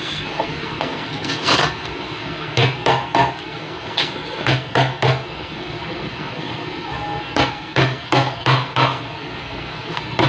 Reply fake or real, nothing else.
fake